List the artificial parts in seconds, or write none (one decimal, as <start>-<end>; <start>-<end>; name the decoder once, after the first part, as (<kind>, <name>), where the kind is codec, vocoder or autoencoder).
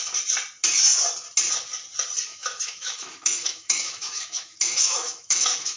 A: 2.3-5.8 (autoencoder, DAC-VAE)